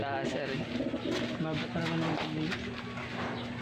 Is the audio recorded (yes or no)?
yes